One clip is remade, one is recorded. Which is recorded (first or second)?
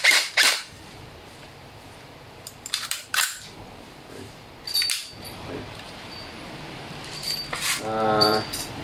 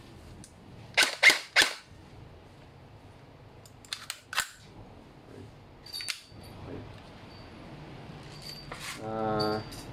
second